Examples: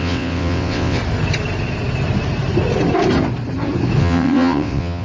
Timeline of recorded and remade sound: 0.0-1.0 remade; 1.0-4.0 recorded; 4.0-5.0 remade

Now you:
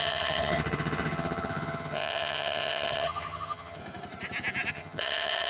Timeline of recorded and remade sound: 0.0-3.8 remade; 3.8-4.7 recorded; 4.7-5.5 remade

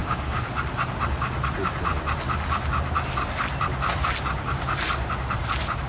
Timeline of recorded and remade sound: 0.0-0.5 remade; 0.5-5.9 recorded